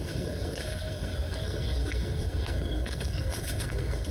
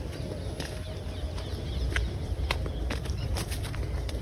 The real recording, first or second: second